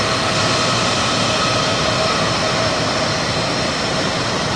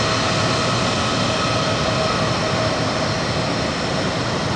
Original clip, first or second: second